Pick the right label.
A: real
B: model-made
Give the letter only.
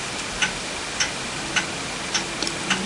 A